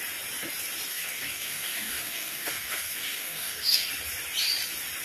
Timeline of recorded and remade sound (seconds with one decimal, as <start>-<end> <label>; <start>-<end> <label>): 0.0-0.9 recorded; 0.9-3.9 remade; 3.9-5.0 recorded